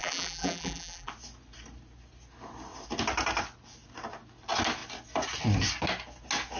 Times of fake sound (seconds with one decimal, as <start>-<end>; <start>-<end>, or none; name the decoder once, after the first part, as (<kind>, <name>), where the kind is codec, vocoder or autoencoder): 0.0-1.1 (vocoder, BigVGAN v2)